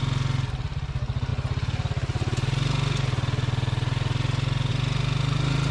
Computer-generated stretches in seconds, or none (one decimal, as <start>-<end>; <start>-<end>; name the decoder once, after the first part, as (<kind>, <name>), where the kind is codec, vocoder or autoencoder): none